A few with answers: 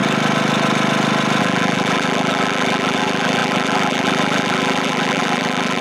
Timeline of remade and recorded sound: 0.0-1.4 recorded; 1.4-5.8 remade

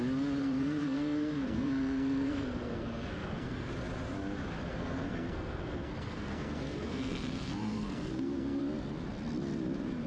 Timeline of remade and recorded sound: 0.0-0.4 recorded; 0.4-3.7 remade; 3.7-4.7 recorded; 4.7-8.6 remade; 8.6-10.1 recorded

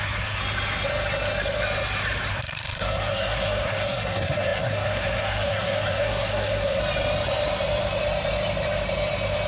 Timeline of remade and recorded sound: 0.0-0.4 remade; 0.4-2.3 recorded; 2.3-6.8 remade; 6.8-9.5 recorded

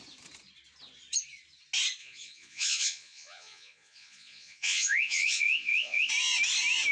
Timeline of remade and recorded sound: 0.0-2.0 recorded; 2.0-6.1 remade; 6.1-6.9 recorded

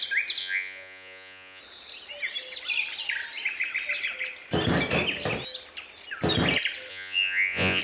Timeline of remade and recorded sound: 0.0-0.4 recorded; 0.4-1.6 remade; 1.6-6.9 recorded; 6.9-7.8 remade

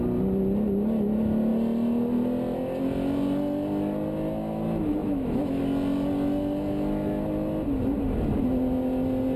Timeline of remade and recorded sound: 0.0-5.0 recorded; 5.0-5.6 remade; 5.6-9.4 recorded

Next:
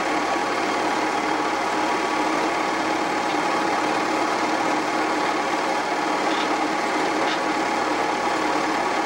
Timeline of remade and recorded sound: 0.0-9.1 recorded